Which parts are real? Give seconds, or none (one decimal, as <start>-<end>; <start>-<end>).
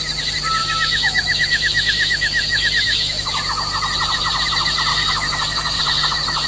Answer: 0.0-0.6; 3.4-4.9; 5.8-6.5